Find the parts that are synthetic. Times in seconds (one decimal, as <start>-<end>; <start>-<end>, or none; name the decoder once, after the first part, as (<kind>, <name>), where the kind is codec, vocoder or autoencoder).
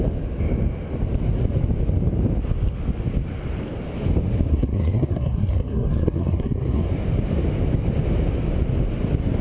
4.5-6.9 (codec, SNAC)